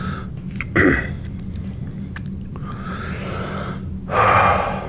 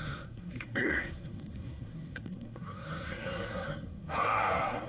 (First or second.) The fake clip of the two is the second